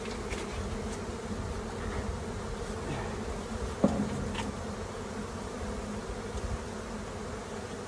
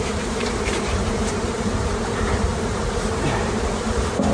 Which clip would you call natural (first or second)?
first